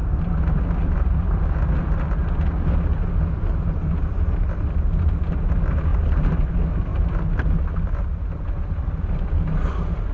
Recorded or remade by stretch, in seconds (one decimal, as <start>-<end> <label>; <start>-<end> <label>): 0.0-10.1 recorded